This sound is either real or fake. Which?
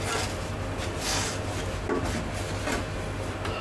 real